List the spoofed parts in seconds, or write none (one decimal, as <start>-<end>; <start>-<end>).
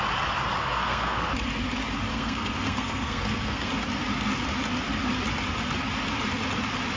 0.6-1.3; 2.1-3.7